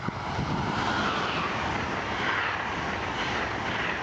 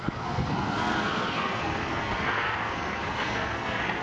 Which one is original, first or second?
first